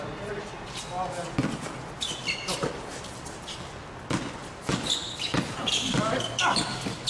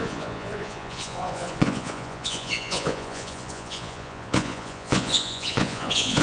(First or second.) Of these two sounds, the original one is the first